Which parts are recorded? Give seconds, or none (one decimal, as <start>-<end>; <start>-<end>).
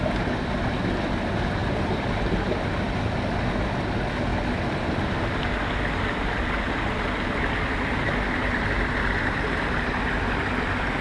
0.0-11.0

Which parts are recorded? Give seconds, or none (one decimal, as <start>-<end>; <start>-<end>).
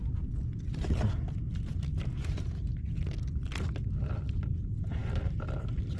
0.0-6.0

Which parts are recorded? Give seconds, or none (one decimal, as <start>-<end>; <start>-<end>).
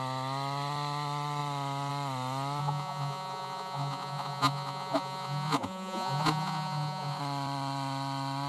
0.0-2.6; 7.2-8.5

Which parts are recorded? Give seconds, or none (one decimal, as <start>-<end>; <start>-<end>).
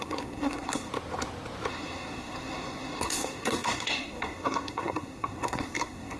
0.9-1.7